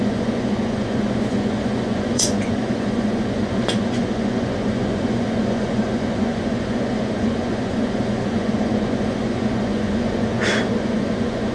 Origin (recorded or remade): remade